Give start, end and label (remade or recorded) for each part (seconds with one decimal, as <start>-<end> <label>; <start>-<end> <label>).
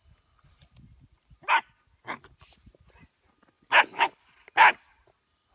0.0-0.5 remade; 0.5-3.8 recorded; 3.8-4.2 remade; 4.2-5.5 recorded